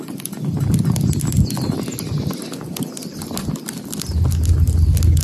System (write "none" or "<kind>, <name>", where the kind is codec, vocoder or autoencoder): none